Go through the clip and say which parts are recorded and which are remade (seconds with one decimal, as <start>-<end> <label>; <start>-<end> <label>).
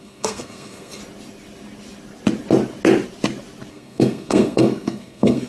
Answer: 0.0-1.0 remade; 1.0-3.7 recorded; 3.7-5.5 remade